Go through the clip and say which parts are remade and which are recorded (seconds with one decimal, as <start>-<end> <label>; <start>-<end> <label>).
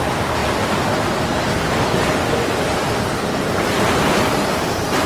0.0-5.1 recorded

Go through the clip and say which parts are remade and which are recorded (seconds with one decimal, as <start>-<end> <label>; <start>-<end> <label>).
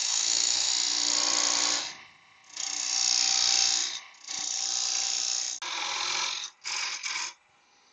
0.0-0.7 remade; 0.7-7.9 recorded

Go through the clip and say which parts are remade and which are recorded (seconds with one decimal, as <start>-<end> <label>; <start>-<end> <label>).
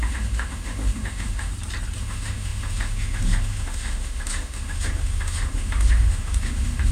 0.0-1.5 remade; 1.5-2.0 recorded; 2.0-6.9 remade